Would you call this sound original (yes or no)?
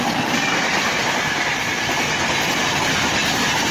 yes